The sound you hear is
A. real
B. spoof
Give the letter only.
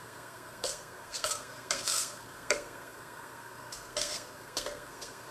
B